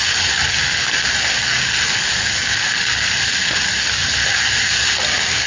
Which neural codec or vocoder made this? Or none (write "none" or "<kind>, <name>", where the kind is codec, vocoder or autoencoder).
none